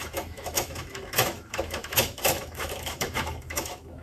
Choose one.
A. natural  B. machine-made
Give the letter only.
B